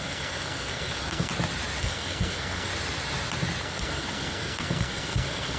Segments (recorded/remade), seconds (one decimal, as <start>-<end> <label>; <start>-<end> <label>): 0.0-1.3 remade; 1.3-1.8 recorded; 1.8-2.7 remade; 2.7-3.6 recorded; 3.6-5.6 remade